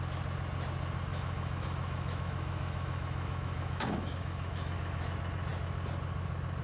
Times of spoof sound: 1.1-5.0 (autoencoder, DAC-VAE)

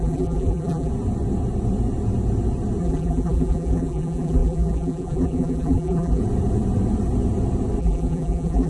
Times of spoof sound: 0.0-0.9 (vocoder, BigVGAN v2); 2.8-6.2; 7.8-8.7

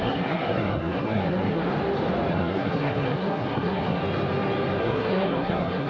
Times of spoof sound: 0.0-1.7 (codec, SNAC); 2.3-4.0; 4.8-5.9